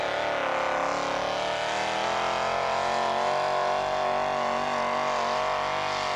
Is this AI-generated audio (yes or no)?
no